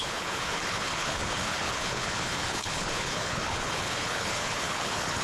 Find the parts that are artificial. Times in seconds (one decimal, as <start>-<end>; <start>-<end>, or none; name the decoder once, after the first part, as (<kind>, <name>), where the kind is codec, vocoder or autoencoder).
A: 0.0-5.2 (codec, HILCodec)